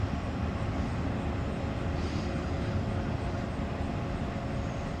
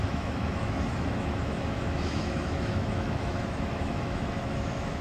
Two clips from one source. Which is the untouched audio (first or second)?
first